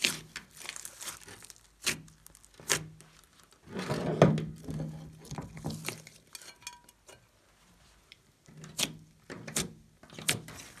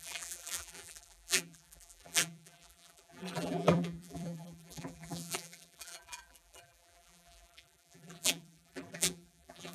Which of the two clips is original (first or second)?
first